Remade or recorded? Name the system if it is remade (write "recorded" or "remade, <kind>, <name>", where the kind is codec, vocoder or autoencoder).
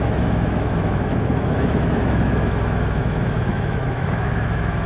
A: remade, autoencoder, DAC-VAE